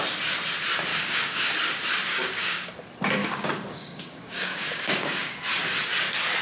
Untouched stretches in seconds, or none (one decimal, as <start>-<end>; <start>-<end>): 0.0-0.9; 1.5-2.1; 2.7-3.2; 5.4-6.4